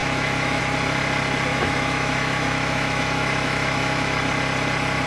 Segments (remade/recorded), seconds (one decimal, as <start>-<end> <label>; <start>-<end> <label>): 0.0-0.6 remade; 0.6-1.5 recorded; 1.5-4.2 remade; 4.2-5.1 recorded